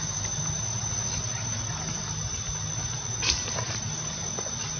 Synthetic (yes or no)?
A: no